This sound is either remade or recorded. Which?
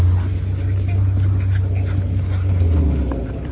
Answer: recorded